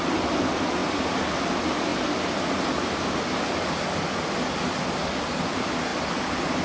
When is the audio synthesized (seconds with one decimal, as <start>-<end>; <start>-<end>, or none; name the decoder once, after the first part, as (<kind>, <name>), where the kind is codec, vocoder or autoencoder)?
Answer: none